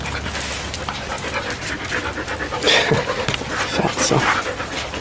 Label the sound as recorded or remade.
recorded